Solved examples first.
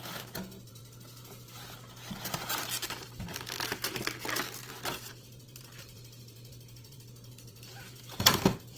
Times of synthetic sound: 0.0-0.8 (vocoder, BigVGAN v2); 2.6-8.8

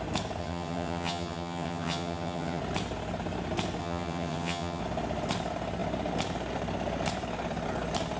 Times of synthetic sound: 0.4-2.6 (vocoder, HiFi-GAN); 3.8-4.8

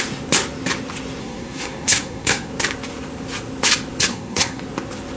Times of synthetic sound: 1.2-2.5 (codec, SNAC); 4.1-4.6